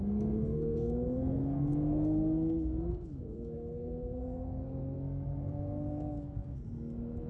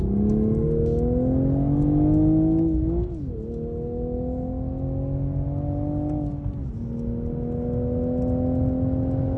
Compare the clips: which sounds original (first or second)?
second